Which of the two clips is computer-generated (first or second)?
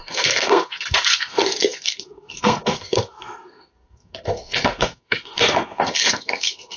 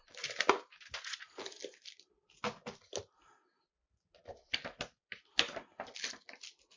first